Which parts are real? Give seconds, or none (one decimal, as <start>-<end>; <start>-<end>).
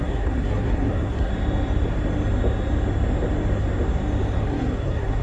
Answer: 1.3-4.4